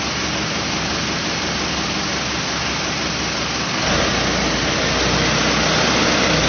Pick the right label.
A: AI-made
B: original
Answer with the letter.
B